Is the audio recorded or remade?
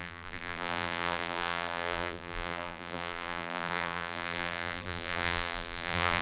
remade